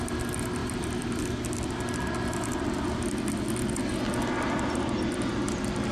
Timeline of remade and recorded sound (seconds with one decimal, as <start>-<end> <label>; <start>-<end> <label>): 0.0-5.9 recorded